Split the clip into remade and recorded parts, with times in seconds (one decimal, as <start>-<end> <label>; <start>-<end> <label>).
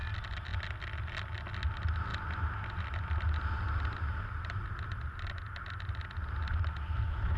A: 0.0-7.4 recorded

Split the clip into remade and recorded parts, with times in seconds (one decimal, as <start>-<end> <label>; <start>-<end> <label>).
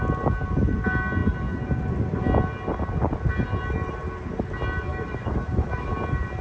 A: 0.0-4.9 recorded; 4.9-5.9 remade; 5.9-6.4 recorded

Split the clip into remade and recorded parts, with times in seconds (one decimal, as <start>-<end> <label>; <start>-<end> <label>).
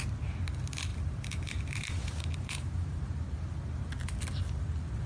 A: 0.0-0.9 recorded; 0.9-3.2 remade; 3.2-5.1 recorded